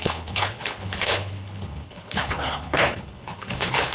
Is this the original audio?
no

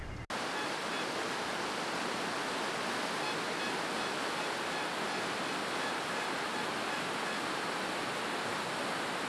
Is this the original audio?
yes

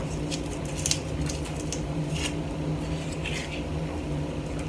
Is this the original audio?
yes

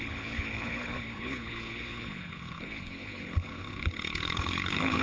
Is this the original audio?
no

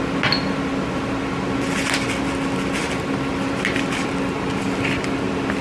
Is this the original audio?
yes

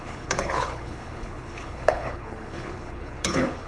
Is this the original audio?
no